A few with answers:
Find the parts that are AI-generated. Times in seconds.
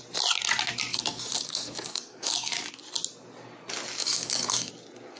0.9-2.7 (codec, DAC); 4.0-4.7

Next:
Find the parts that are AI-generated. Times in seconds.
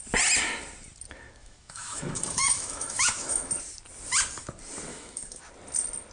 1.4-3.5 (autoencoder, DAC-VAE); 4.9-5.4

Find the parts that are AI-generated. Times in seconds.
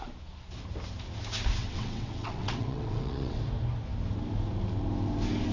1.6-3.4 (vocoder, WaveNeXt)